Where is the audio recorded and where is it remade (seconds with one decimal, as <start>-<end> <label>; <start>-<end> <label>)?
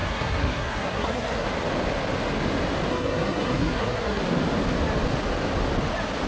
0.0-1.5 remade; 1.5-2.9 recorded; 2.9-4.2 remade; 4.2-6.3 recorded